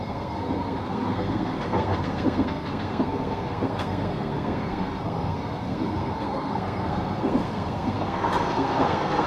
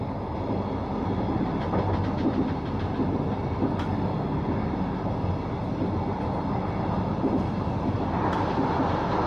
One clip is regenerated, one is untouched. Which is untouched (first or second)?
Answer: second